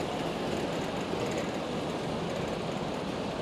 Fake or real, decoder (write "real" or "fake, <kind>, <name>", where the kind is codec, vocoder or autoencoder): real